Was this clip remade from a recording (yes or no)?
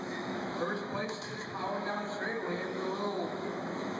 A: yes